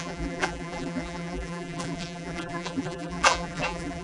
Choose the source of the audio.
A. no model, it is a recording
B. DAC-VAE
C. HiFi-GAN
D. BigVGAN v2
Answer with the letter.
D